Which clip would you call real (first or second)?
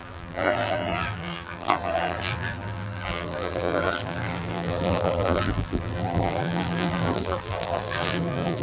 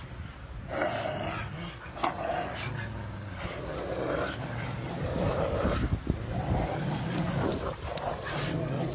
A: second